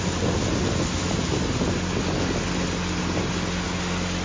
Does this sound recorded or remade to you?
recorded